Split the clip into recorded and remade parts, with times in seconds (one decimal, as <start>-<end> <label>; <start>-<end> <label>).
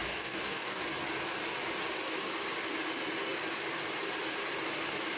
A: 0.0-0.8 remade; 0.8-5.2 recorded